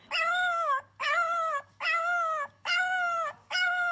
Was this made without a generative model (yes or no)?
no